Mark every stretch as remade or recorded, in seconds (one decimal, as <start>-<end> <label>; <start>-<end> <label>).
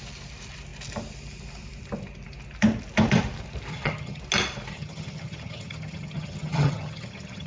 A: 0.0-3.7 recorded; 3.7-4.2 remade; 4.2-4.7 recorded; 4.7-7.5 remade